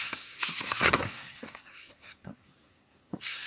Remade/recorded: remade